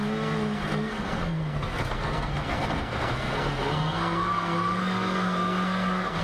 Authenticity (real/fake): fake